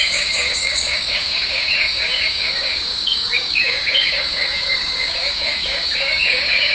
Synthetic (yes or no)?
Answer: yes